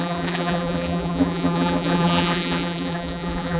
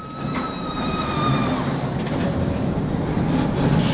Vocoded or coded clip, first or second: first